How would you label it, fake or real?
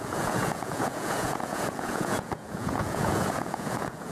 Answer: fake